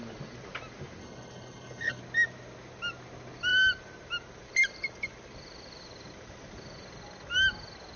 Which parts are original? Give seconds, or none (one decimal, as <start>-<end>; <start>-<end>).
0.0-1.0; 2.0-8.0